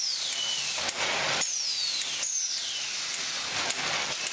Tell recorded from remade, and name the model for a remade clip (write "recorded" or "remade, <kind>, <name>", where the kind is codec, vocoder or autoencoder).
recorded